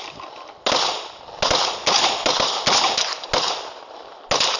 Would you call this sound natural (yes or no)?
yes